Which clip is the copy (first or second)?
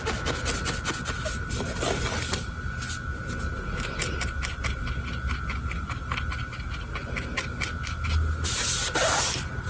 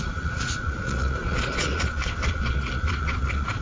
second